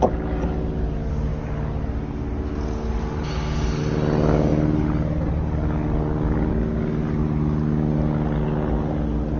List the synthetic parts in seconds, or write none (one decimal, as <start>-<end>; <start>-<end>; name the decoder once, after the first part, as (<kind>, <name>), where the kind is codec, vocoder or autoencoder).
none